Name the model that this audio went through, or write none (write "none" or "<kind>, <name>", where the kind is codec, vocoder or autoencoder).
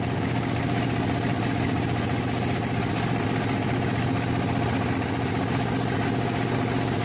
none